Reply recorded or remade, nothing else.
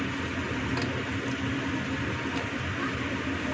recorded